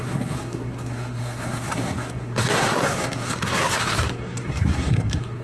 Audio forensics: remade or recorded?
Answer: remade